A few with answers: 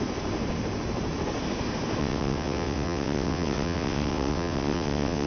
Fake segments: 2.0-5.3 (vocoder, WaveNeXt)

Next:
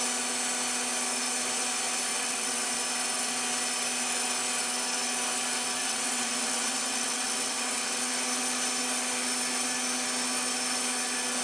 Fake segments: 2.1-2.8 (vocoder, WaveNeXt); 5.8-8.0

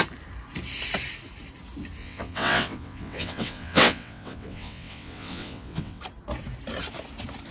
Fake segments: 2.0-6.0 (vocoder, WaveNeXt)

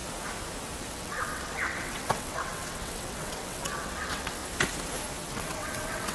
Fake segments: 0.9-4.4 (vocoder, WaveNeXt); 5.3-6.1

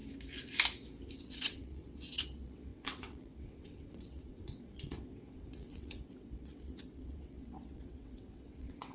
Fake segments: 1.2-8.9 (vocoder, WaveNeXt)

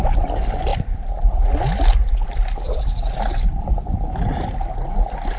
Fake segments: none

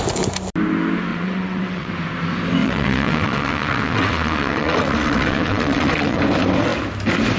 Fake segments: 1.1-1.9 (vocoder, WaveNeXt); 2.6-6.2

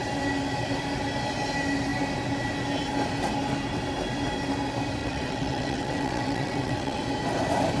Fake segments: 5.0-7.0 (vocoder, WaveNeXt)